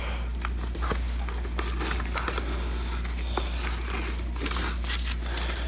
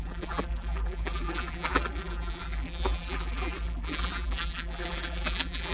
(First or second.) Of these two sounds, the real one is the first